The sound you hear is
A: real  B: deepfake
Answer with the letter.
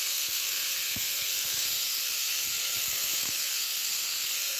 B